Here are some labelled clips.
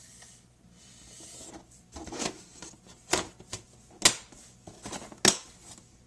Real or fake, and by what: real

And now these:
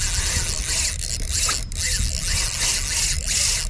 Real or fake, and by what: real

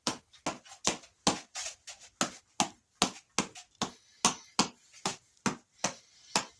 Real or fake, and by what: real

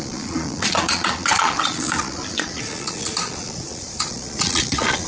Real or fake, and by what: fake, vocoder, Vocos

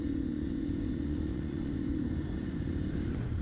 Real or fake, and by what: fake, vocoder, Vocos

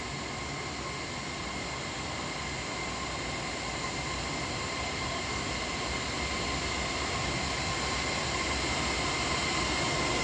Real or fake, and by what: real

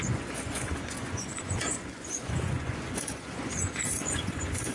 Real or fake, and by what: fake, vocoder, Vocos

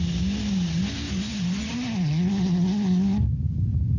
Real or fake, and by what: real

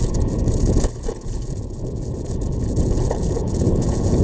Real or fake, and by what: fake, vocoder, Vocos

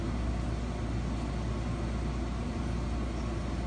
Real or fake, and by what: real